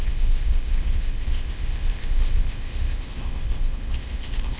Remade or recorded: remade